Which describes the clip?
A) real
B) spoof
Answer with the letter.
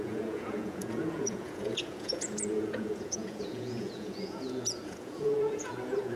B